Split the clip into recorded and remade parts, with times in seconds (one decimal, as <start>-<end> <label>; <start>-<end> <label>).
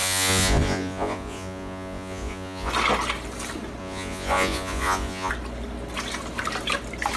0.0-2.7 remade; 2.7-3.8 recorded; 3.8-5.3 remade; 5.3-7.2 recorded